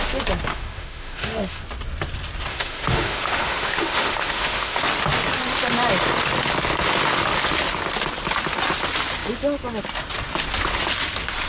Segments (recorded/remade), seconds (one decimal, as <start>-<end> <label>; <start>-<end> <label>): 0.0-0.5 recorded; 0.5-1.6 remade; 1.6-2.5 recorded; 2.5-4.8 remade; 4.8-11.5 recorded